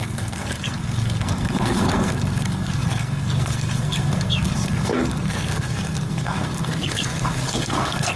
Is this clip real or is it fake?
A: fake